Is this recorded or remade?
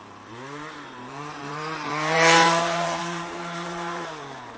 remade